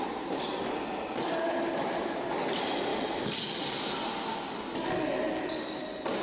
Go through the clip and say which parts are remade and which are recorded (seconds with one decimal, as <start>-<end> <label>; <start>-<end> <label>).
0.0-6.2 recorded